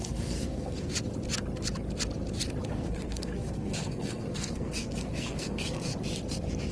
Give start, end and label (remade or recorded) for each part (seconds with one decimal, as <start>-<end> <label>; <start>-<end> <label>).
0.0-0.9 remade; 0.9-2.7 recorded; 2.7-5.9 remade; 5.9-6.7 recorded